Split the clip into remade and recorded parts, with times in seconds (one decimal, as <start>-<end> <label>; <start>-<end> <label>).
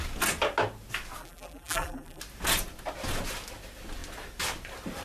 0.0-1.2 recorded; 1.2-2.2 remade; 2.2-5.0 recorded